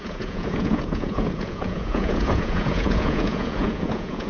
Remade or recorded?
remade